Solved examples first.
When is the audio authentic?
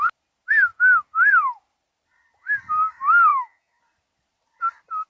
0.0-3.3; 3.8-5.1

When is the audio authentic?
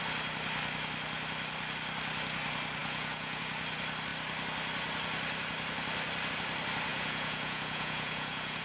0.0-2.8; 3.4-6.9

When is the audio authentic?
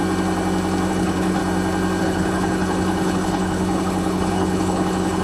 0.0-0.9; 1.4-2.0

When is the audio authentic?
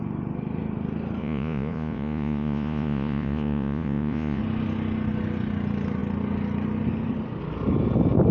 0.0-1.2; 4.4-8.3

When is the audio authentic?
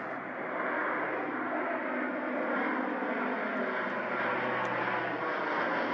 0.0-5.9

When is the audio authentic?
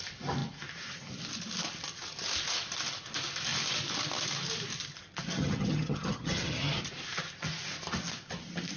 0.0-5.4; 6.8-8.8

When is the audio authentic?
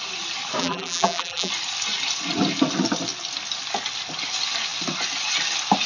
0.0-0.6; 1.5-5.9